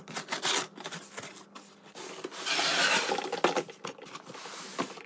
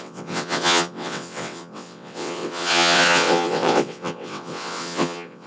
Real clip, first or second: first